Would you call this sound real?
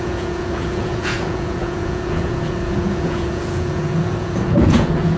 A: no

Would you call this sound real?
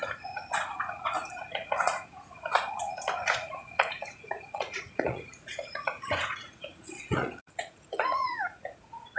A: no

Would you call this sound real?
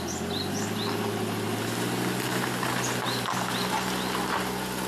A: yes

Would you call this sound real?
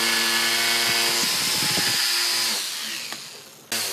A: yes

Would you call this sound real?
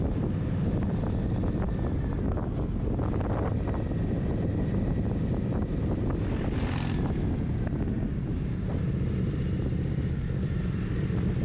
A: yes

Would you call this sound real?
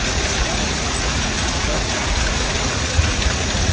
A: no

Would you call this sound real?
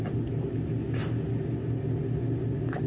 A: yes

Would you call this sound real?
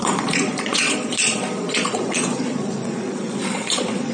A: no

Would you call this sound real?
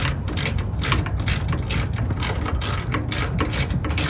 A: yes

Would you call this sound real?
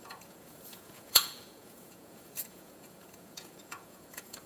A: no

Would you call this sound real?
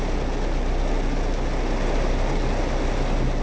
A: yes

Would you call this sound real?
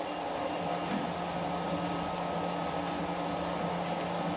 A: yes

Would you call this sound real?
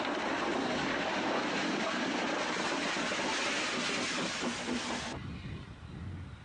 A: yes